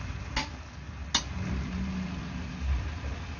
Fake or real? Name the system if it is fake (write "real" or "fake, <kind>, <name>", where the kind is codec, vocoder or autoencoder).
real